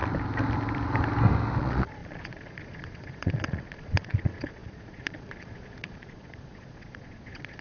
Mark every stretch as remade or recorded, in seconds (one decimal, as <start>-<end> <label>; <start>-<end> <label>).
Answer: 0.0-1.6 recorded; 1.6-7.6 remade